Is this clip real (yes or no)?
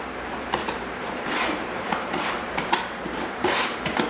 no